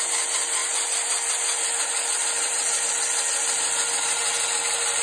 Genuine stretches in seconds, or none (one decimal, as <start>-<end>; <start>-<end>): 0.0-5.0